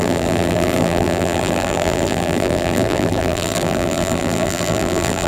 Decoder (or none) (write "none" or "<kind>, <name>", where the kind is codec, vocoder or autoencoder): vocoder, BigVGAN v2